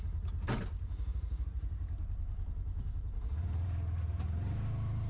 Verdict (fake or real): fake